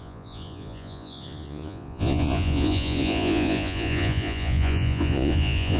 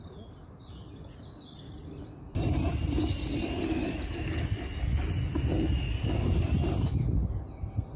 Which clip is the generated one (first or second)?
first